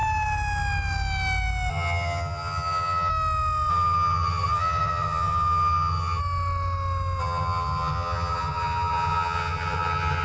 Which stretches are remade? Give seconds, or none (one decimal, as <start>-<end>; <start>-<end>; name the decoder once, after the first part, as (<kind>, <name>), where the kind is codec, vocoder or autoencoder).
1.7-3.1 (vocoder, HiFi-GAN); 3.7-6.2; 7.2-10.2

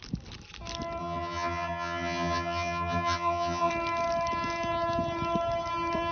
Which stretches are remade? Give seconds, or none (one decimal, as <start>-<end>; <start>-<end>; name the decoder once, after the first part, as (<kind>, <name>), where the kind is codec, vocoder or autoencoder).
1.0-3.7 (vocoder, HiFi-GAN)

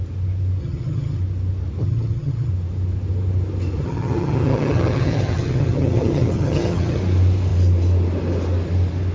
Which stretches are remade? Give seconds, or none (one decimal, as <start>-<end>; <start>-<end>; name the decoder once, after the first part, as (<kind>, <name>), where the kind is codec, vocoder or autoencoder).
0.6-1.2 (vocoder, HiFi-GAN); 1.8-2.5; 3.8-7.0